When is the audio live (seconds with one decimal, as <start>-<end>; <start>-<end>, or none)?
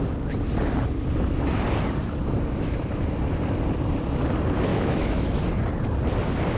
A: 0.0-4.7; 5.3-6.6